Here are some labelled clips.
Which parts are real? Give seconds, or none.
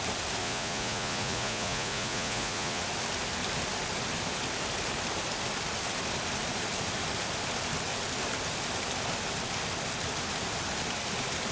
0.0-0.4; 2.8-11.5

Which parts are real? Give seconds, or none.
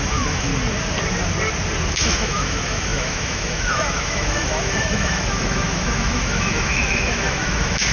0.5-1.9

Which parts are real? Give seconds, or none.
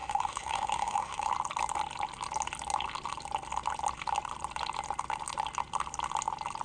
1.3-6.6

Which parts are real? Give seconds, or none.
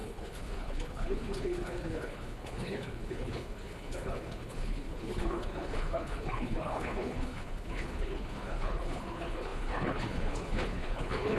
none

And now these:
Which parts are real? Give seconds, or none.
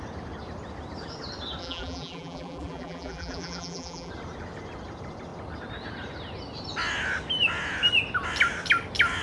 0.0-1.6; 4.1-9.2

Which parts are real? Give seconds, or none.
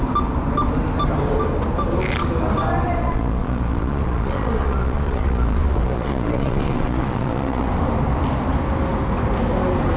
0.0-3.0; 7.7-10.0